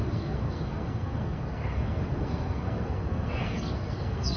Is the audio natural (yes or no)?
no